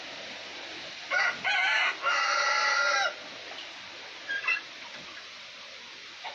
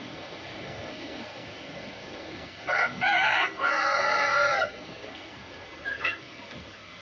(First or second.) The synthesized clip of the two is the second